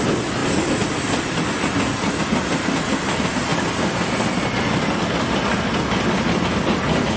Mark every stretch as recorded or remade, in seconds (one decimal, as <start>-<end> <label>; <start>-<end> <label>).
0.0-7.2 recorded